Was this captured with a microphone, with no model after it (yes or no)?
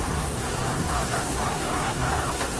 no